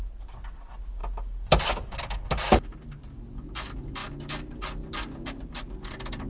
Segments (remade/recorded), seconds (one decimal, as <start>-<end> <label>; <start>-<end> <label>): 0.0-6.3 recorded